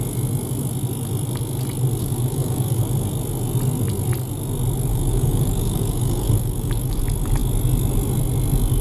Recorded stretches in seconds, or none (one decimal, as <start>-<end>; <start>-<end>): 0.0-2.0; 2.8-4.9; 7.0-8.8